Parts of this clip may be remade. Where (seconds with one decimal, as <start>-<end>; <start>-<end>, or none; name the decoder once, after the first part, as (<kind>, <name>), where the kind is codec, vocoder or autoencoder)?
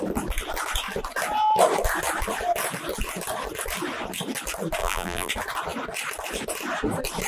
4.8-5.3 (vocoder, BigVGAN v2)